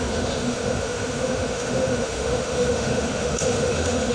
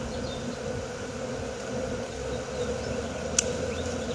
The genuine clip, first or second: second